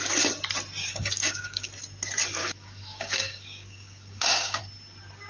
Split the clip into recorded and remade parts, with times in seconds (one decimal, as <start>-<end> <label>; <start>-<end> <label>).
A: 0.0-0.8 recorded; 0.8-1.7 remade; 1.7-2.4 recorded; 2.4-4.6 remade; 4.6-5.3 recorded